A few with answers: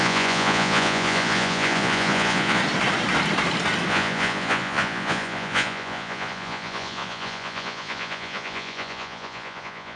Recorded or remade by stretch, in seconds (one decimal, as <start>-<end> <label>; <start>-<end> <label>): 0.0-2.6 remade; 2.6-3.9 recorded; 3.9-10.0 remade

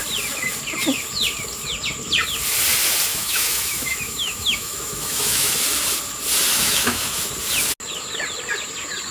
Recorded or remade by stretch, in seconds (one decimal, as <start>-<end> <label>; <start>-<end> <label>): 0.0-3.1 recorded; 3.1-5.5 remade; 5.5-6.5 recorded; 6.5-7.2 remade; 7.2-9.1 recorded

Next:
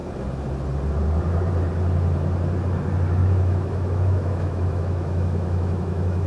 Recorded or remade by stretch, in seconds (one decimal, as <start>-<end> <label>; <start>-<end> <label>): 0.0-3.2 recorded; 3.2-6.3 remade